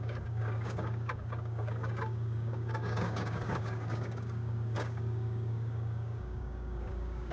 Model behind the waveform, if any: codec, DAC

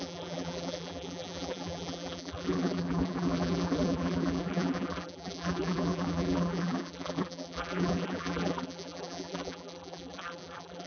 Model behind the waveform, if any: vocoder, BigVGAN v2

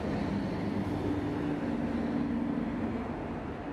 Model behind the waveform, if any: none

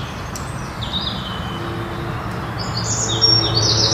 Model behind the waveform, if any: none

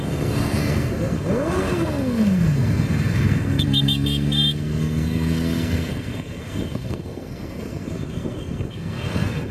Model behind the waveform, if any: codec, SNAC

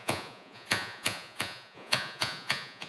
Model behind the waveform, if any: vocoder, Vocos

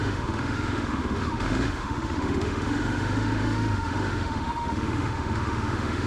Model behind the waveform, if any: autoencoder, DAC-VAE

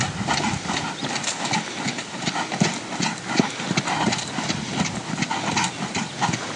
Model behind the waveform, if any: none